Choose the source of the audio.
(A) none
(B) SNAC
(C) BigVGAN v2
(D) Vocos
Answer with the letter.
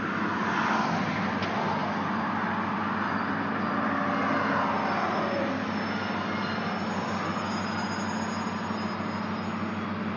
A